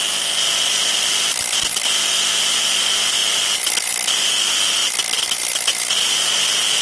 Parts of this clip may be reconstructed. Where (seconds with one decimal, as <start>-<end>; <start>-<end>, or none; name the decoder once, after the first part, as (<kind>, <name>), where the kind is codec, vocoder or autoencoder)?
none